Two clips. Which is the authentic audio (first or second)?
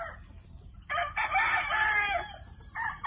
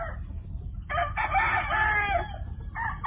second